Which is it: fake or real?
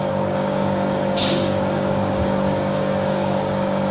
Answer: fake